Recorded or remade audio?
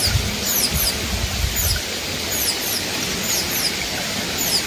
remade